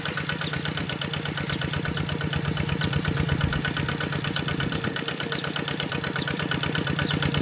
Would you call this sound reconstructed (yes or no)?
yes